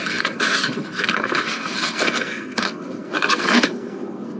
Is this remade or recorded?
remade